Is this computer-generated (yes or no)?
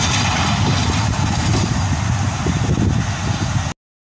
no